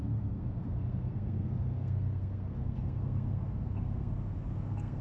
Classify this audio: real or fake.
fake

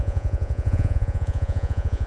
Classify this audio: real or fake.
fake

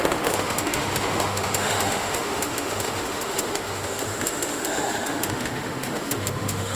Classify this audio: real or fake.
fake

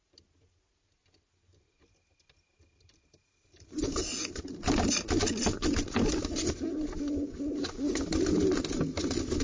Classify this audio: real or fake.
real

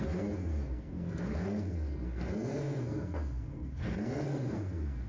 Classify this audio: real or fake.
fake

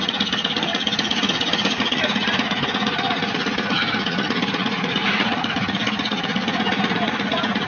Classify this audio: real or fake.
fake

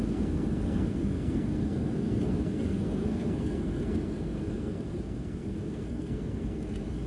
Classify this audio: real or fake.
fake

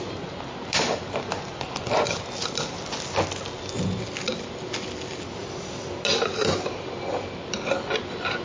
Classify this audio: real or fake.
real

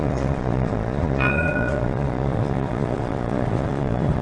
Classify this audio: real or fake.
fake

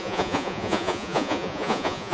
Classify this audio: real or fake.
fake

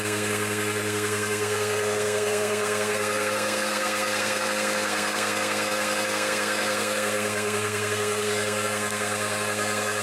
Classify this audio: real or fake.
fake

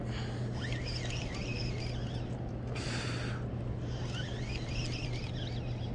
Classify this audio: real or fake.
real